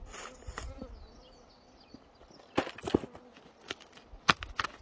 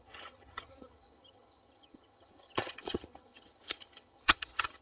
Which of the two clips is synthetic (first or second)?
second